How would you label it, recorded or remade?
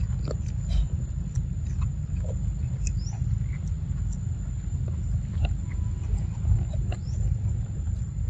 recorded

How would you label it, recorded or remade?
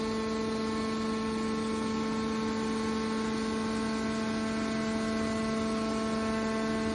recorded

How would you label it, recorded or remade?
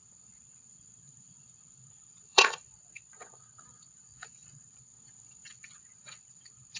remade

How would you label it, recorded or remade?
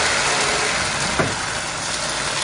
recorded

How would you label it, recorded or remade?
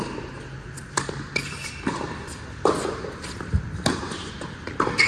recorded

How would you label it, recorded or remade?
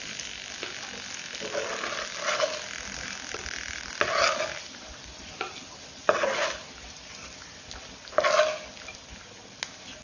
recorded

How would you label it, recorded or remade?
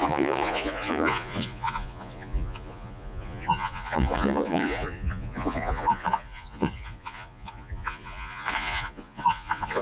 remade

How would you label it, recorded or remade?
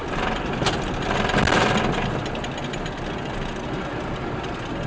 recorded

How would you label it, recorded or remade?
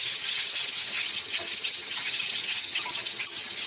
remade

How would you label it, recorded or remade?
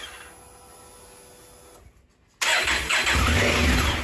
recorded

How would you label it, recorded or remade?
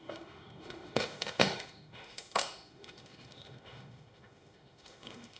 remade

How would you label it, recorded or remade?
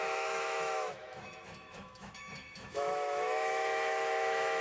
remade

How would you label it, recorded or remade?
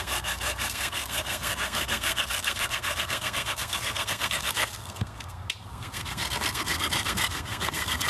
remade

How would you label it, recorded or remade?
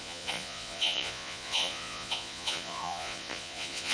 remade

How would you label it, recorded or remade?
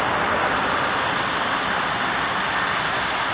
recorded